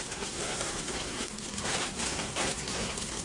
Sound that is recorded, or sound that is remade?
remade